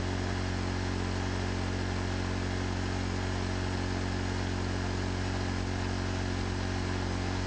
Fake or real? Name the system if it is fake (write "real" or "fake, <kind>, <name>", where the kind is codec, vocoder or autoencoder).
real